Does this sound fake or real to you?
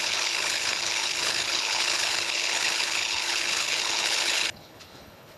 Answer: fake